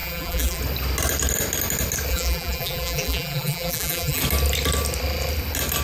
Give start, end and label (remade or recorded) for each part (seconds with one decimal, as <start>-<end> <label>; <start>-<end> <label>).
0.0-0.6 remade; 0.6-2.1 recorded; 2.1-4.2 remade; 4.2-5.8 recorded